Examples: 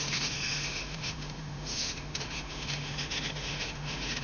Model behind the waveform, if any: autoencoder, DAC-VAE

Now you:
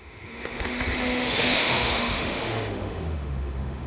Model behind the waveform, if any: autoencoder, DAC-VAE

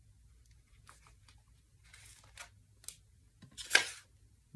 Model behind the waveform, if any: none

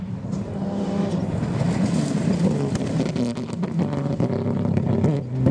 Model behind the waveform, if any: none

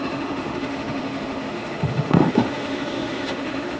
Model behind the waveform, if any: autoencoder, DAC-VAE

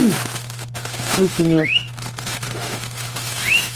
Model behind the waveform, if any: autoencoder, DAC-VAE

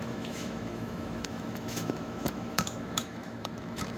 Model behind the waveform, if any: autoencoder, DAC-VAE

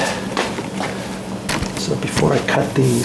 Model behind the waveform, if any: none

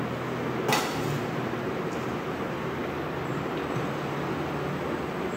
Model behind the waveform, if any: none